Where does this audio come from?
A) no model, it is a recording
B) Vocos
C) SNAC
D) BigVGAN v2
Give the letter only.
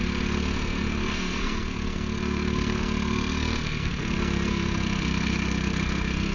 C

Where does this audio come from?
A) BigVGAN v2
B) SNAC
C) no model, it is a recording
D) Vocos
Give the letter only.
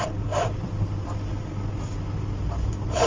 C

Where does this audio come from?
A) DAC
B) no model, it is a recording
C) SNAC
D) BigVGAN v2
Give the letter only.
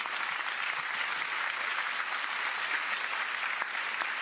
B